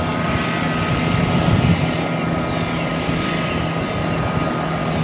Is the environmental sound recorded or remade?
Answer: recorded